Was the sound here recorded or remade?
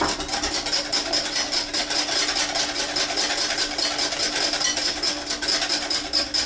recorded